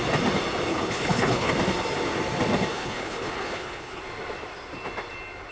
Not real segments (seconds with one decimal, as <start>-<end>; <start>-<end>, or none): 0.7-1.5; 2.7-4.0